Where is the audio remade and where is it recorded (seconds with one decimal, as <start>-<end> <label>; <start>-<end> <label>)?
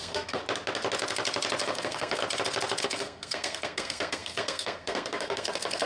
0.0-0.4 remade; 0.4-1.6 recorded; 1.6-2.2 remade; 2.2-2.8 recorded; 2.8-5.9 remade